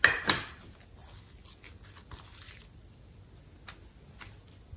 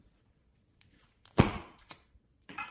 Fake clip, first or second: second